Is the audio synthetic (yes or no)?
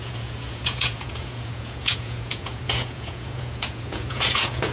yes